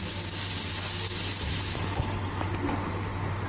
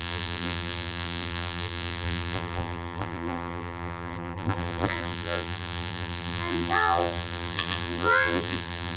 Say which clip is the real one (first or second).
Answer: first